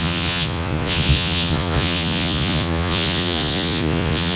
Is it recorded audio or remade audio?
remade